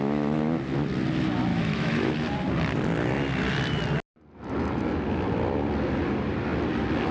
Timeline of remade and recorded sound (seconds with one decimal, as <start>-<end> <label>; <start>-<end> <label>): 0.0-1.5 recorded; 1.5-2.1 remade; 2.1-7.1 recorded